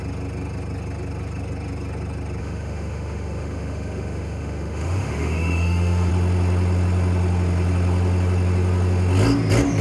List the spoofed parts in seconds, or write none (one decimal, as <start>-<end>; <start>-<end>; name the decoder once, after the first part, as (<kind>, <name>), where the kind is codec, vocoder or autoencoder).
2.4-6.1 (autoencoder, DAC-VAE)